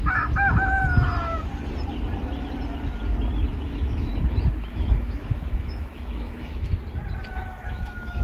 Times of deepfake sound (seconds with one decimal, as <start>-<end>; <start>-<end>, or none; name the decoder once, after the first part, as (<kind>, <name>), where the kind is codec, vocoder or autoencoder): 3.5-4.1 (autoencoder, DAC-VAE); 4.6-6.7; 7.3-8.2